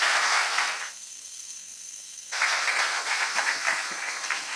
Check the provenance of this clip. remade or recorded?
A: remade